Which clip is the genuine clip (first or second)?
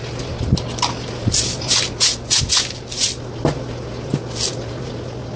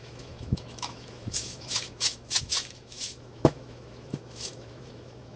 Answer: first